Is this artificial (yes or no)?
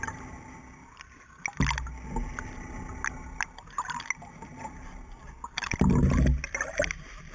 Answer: no